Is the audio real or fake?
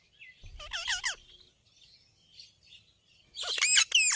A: real